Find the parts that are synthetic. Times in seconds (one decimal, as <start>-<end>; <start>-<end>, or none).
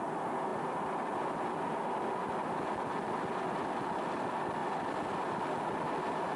none